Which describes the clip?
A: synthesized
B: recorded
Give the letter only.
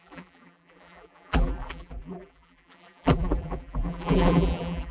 A